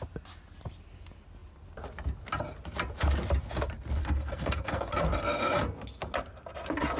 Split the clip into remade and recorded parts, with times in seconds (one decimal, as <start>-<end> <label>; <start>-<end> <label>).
0.0-4.0 recorded; 4.0-4.9 remade; 4.9-7.0 recorded